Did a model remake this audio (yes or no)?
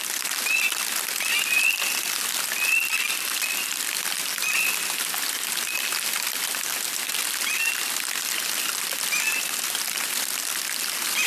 no